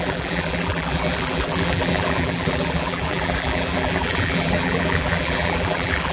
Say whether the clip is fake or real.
fake